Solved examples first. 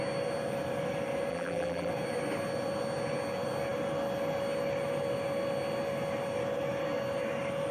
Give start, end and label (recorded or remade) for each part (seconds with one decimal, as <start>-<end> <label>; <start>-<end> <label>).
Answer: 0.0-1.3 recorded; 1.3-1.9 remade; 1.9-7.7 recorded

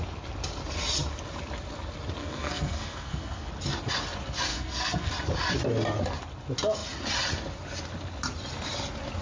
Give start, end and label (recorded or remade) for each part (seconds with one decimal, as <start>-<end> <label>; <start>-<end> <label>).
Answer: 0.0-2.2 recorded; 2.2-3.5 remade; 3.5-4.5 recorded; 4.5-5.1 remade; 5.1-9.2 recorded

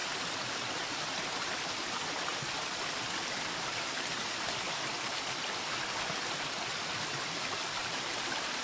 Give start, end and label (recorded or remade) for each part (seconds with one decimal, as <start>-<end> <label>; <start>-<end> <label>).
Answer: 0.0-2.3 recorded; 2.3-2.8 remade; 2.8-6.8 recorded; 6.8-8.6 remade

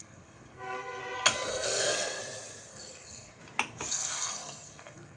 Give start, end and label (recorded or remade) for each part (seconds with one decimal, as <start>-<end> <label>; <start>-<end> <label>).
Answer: 0.0-1.0 remade; 1.0-1.5 recorded; 1.5-2.2 remade; 2.2-2.7 recorded; 2.7-3.4 remade; 3.4-3.9 recorded; 3.9-5.2 remade

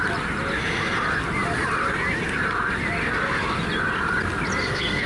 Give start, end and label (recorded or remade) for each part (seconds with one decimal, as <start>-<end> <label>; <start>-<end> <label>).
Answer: 0.0-4.6 recorded; 4.6-5.1 remade

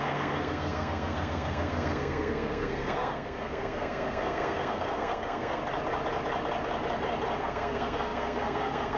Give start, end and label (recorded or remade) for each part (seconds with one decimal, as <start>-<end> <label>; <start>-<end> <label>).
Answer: 0.0-5.6 remade; 5.6-7.4 recorded; 7.4-9.0 remade

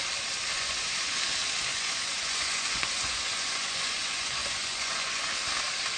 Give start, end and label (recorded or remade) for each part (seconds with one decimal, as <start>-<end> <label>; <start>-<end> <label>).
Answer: 0.0-0.5 recorded; 0.5-1.2 remade; 1.2-1.7 recorded; 1.7-5.3 remade; 5.3-6.0 recorded